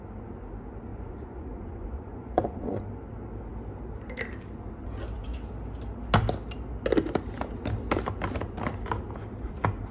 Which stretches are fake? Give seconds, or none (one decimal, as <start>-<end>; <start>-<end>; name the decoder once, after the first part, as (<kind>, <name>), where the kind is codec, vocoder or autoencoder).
0.9-2.8 (vocoder, Vocos)